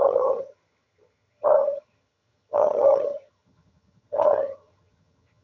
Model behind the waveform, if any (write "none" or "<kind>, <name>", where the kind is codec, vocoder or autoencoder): vocoder, HiFi-GAN